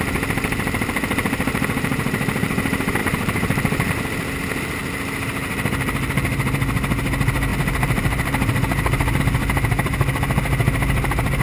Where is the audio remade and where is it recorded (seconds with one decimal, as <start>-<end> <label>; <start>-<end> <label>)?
0.0-3.0 recorded; 3.0-3.9 remade; 3.9-7.5 recorded; 7.5-9.2 remade; 9.2-11.4 recorded